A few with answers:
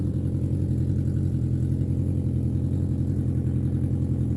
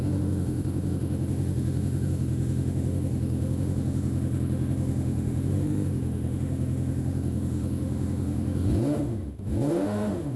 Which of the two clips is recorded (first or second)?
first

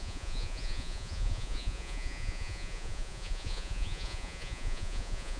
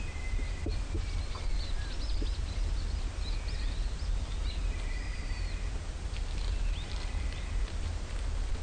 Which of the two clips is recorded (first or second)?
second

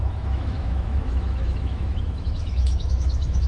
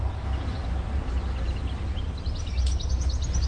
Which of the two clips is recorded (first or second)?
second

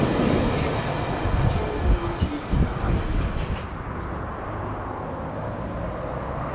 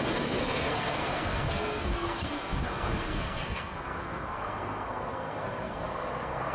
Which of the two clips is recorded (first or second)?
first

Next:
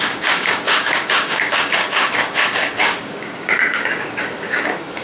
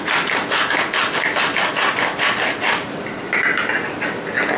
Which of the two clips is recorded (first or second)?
second